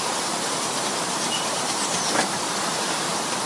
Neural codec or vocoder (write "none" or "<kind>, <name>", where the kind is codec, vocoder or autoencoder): vocoder, BigVGAN v2